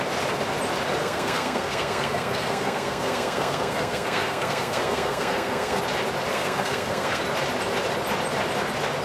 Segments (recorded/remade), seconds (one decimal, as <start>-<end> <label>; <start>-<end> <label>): 0.0-1.0 recorded; 1.0-5.8 remade; 5.8-6.3 recorded; 6.3-7.2 remade; 7.2-9.0 recorded